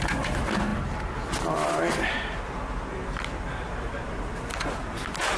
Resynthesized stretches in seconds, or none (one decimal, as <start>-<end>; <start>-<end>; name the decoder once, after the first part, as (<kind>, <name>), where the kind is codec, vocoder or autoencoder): none

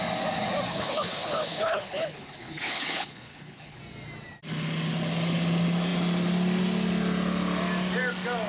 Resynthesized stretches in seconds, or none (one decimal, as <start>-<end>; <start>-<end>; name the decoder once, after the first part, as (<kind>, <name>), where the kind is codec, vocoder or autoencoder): 0.7-3.8 (codec, HILCodec)